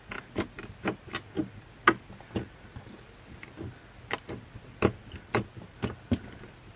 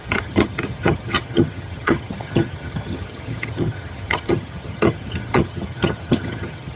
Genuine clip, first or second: first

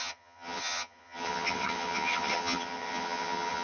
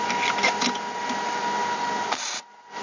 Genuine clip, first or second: second